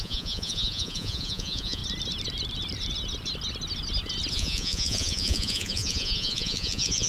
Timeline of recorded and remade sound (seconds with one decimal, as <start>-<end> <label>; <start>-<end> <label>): 0.0-1.8 remade; 1.8-4.3 recorded; 4.3-7.1 remade